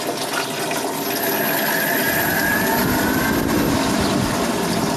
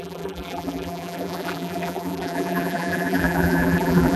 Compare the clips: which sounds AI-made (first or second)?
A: second